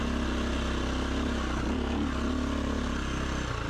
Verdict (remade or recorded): recorded